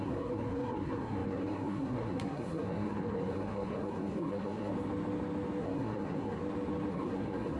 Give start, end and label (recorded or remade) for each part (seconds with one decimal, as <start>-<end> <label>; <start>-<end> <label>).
0.0-4.7 remade; 4.7-5.6 recorded; 5.6-6.4 remade; 6.4-6.9 recorded; 6.9-7.6 remade